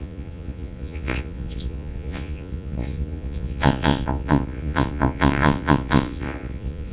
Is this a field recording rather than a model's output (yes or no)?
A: no